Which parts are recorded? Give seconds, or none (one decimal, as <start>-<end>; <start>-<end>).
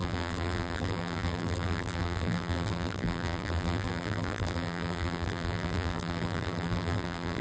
none